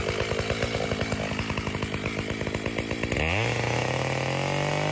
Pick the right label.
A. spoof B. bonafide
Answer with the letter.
B